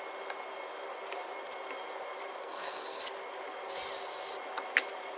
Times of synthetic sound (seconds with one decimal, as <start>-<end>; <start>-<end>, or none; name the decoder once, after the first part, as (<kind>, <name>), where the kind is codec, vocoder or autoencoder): 2.4-3.0 (codec, SNAC)